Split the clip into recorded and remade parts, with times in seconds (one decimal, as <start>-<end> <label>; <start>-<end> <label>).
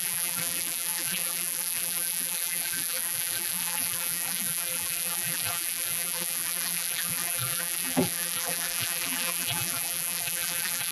0.0-10.9 remade